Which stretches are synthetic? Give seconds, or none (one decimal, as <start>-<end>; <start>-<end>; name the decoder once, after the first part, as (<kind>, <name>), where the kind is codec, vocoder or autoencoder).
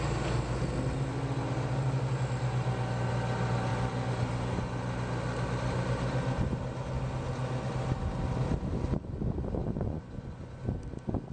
9.6-10.6 (vocoder, Vocos)